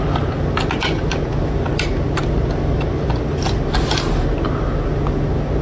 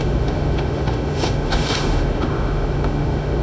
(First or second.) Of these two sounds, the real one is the first